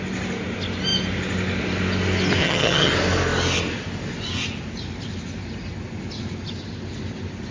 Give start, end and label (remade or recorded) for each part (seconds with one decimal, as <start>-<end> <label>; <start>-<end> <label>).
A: 0.0-2.4 recorded; 2.4-2.9 remade; 2.9-7.5 recorded